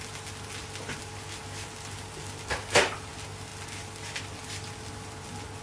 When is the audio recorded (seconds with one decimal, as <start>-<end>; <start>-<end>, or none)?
0.0-5.6